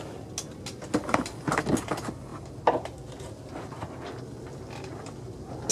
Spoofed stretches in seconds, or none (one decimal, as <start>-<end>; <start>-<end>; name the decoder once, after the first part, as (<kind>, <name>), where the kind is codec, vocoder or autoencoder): none

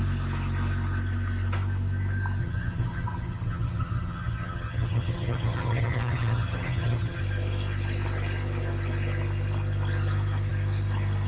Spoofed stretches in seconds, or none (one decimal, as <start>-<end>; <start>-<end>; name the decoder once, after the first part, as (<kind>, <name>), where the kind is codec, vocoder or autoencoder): 2.4-7.2 (vocoder, HiFi-GAN)

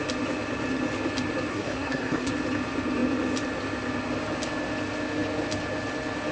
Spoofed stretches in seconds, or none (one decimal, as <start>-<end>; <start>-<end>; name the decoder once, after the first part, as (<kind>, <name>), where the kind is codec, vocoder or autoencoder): 1.5-2.3 (codec, SNAC)